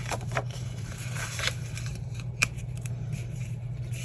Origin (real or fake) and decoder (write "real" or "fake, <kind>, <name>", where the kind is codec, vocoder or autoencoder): fake, vocoder, BigVGAN v2